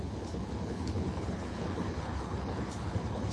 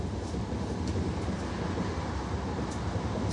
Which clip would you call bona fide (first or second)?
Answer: second